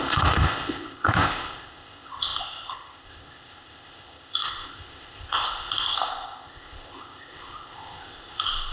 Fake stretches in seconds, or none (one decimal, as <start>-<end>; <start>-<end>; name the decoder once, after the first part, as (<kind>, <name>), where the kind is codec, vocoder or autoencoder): 0.0-8.7 (codec, ZipCodec)